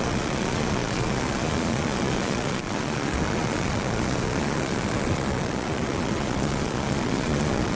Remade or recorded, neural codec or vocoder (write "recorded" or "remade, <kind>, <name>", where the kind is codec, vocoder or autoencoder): remade, vocoder, Vocos